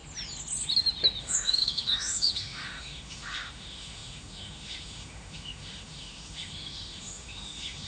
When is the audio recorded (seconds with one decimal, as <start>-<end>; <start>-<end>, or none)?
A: 0.0-1.2